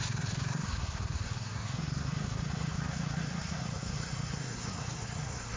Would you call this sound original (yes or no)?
no